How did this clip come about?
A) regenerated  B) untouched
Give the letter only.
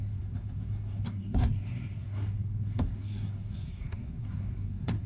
A